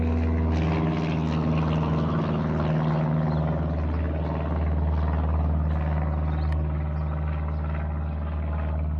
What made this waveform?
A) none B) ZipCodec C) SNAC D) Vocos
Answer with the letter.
A